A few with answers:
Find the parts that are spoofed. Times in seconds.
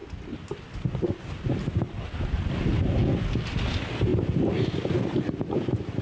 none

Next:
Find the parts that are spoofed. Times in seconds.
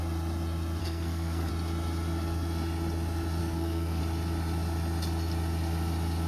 0.8-1.5; 3.4-4.0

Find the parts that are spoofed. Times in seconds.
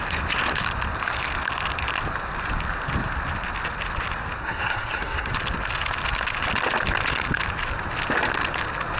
4.4-5.3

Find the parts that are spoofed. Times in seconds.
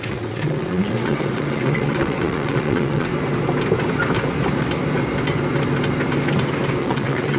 0.0-3.1; 6.8-7.4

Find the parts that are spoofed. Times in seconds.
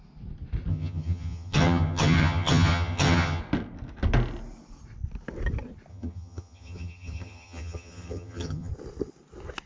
0.7-3.4; 5.9-8.7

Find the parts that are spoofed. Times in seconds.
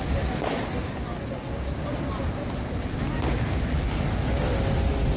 1.5-2.1